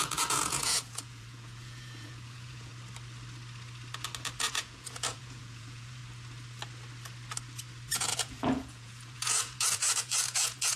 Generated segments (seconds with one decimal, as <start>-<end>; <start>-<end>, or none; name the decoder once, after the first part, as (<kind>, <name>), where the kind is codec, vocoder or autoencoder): 0.0-2.7 (vocoder, Vocos); 4.4-6.0; 7.9-10.8